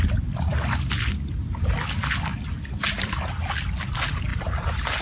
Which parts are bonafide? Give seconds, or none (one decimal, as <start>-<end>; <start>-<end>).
0.0-5.0